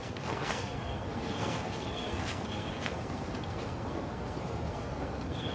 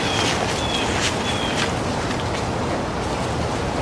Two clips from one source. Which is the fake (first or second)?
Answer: first